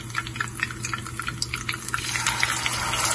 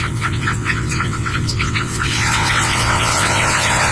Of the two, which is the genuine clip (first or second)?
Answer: first